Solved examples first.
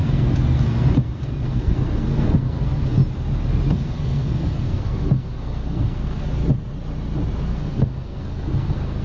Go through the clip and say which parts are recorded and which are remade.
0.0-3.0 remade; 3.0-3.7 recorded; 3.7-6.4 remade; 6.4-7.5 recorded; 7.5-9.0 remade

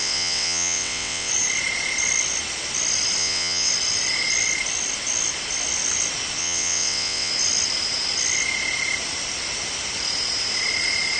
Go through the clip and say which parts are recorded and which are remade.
0.0-1.3 remade; 1.3-3.2 recorded; 3.2-3.7 remade; 3.7-6.4 recorded; 6.4-7.3 remade; 7.3-11.2 recorded

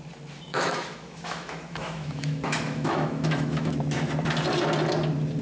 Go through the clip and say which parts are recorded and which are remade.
0.0-0.5 recorded; 0.5-3.7 remade; 3.7-5.4 recorded

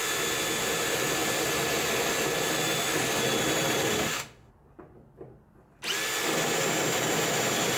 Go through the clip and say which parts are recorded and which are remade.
0.0-3.9 recorded; 3.9-4.5 remade; 4.5-7.8 recorded

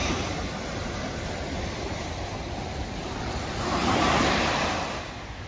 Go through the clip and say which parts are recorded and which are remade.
0.0-5.5 recorded